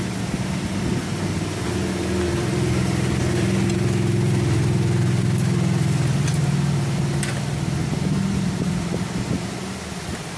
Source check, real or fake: real